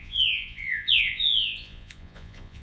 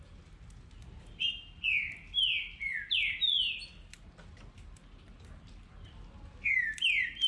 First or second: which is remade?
first